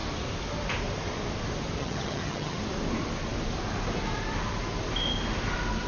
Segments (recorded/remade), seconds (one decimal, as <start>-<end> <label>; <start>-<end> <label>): 0.0-1.8 recorded; 1.8-2.6 remade; 2.6-5.9 recorded